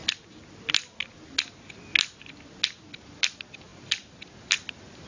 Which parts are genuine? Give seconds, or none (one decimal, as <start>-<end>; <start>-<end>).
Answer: 0.0-5.1